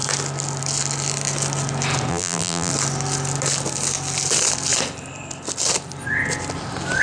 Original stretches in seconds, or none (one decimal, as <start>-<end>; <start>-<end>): 0.0-2.1; 2.7-7.0